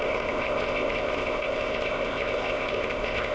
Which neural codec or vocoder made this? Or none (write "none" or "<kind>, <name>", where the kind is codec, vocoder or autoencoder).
codec, ZipCodec